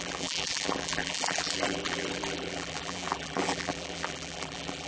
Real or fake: fake